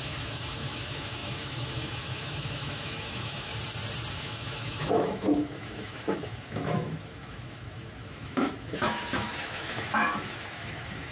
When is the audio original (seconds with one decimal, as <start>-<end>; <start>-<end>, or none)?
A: 3.5-4.1